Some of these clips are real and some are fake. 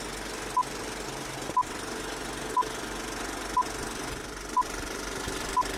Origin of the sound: real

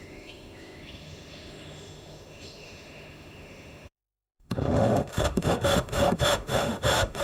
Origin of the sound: fake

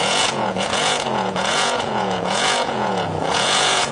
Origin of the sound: fake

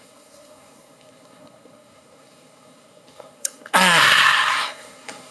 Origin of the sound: fake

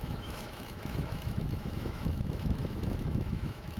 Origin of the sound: fake